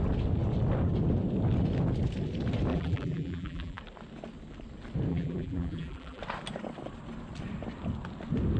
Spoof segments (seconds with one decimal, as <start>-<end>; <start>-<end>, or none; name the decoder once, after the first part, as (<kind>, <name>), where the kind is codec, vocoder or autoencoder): 2.7-3.8 (vocoder, BigVGAN v2); 5.1-6.2